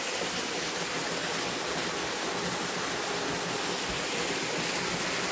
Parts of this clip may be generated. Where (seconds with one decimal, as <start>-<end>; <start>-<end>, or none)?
none